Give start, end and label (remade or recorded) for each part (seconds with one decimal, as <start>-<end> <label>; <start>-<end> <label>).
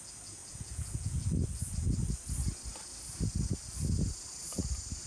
0.0-0.4 recorded; 0.4-1.3 remade; 1.3-5.1 recorded